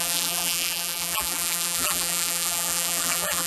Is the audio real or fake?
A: fake